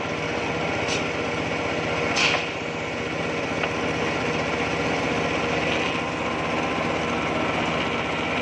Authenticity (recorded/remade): recorded